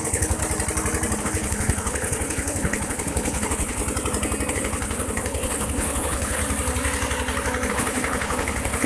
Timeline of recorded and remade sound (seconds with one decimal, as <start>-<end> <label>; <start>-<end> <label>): 0.0-0.4 remade; 0.4-1.2 recorded; 1.2-3.8 remade; 3.8-4.5 recorded; 4.5-6.4 remade; 6.4-7.7 recorded; 7.7-8.9 remade